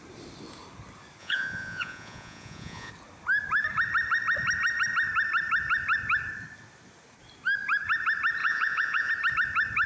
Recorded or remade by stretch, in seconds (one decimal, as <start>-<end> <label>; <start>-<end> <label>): 0.0-1.2 recorded; 1.2-2.9 remade; 2.9-8.4 recorded; 8.4-9.1 remade; 9.1-9.9 recorded